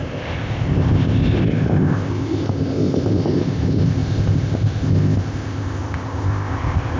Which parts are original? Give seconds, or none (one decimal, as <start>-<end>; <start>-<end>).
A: none